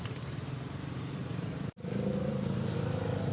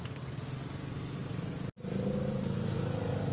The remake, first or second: first